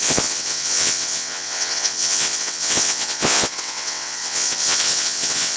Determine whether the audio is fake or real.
fake